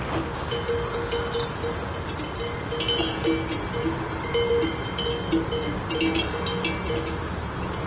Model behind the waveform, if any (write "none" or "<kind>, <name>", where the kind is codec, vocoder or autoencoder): none